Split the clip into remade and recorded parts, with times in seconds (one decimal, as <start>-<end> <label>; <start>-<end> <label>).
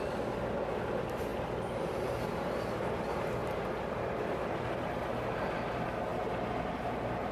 0.0-1.3 recorded; 1.3-3.0 remade; 3.0-3.4 recorded; 3.4-4.7 remade; 4.7-7.3 recorded